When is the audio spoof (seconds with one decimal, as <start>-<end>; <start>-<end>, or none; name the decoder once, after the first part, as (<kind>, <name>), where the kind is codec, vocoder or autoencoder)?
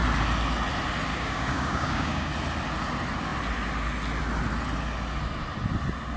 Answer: 1.1-2.3 (codec, DAC)